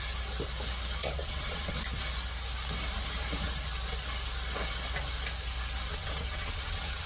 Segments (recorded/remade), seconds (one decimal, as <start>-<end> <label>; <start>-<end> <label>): 0.0-1.0 recorded; 1.0-1.8 remade; 1.8-5.9 recorded; 5.9-7.1 remade